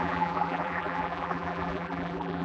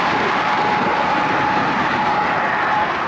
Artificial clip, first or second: first